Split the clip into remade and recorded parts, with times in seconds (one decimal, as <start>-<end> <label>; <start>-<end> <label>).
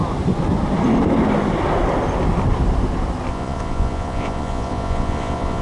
0.0-3.3 recorded; 3.3-5.6 remade